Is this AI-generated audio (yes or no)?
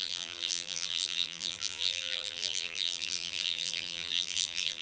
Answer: yes